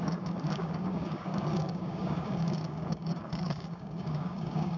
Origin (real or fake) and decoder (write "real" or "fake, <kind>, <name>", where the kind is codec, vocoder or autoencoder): fake, codec, DAC